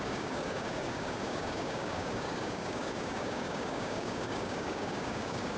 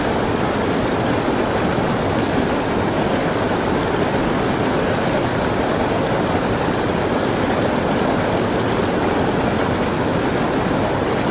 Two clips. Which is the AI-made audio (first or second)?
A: first